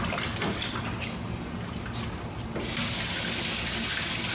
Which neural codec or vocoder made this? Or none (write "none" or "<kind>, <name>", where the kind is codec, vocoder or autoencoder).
none